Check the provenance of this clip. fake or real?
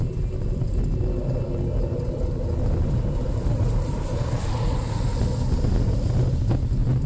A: real